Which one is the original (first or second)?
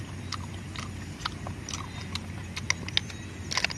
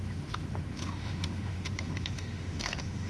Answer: first